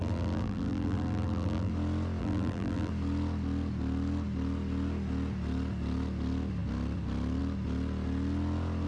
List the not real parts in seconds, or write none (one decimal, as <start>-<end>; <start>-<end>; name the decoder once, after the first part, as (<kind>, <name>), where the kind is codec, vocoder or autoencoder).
0.0-1.7 (vocoder, BigVGAN v2); 2.2-2.9